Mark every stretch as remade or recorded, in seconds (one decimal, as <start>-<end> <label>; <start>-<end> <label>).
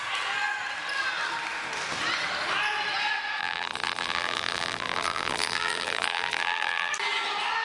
0.0-3.4 recorded; 3.4-6.9 remade; 6.9-7.6 recorded